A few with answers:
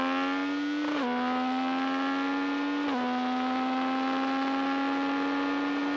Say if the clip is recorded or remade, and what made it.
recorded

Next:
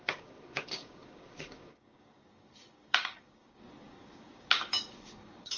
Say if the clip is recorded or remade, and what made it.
remade, codec, DAC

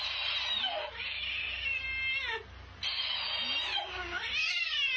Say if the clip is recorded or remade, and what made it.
recorded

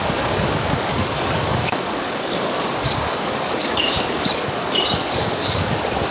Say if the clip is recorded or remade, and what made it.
remade, codec, DAC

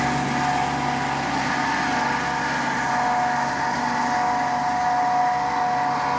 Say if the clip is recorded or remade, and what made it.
recorded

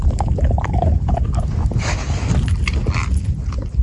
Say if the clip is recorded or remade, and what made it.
recorded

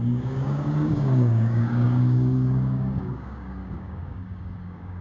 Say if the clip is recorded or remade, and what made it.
remade, codec, DAC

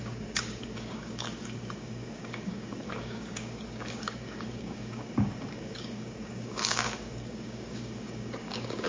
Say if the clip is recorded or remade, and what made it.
remade, codec, DAC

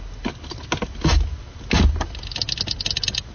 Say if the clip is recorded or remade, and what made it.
recorded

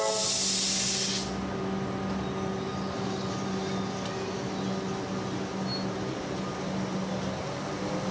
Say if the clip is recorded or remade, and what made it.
recorded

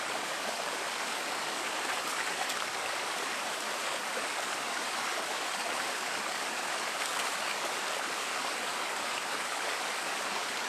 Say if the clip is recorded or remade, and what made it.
remade, codec, DAC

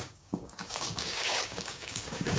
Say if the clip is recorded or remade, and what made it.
remade, codec, DAC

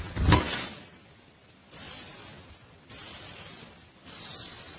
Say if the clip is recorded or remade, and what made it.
recorded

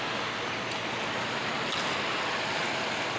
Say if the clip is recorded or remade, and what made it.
recorded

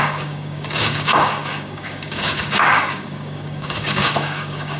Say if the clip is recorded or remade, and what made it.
remade, codec, DAC